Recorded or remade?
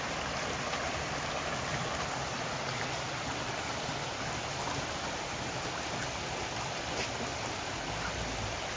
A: recorded